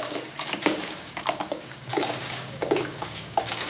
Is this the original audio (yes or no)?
no